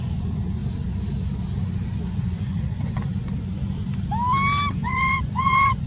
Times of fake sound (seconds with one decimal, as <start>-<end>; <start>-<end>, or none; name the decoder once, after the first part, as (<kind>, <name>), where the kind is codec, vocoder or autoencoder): 0.0-0.6 (vocoder, Vocos); 2.0-3.1; 4.7-5.9